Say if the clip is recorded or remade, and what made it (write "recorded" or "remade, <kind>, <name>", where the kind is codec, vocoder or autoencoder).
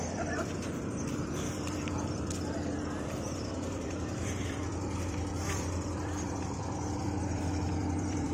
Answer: remade, vocoder, BigVGAN v2